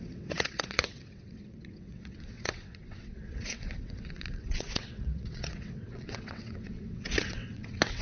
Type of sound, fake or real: fake